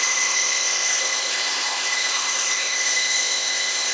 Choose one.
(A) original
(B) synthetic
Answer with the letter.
B